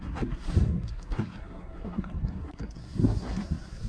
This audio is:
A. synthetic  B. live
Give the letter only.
A